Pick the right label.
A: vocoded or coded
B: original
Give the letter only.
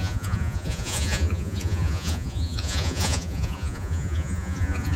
A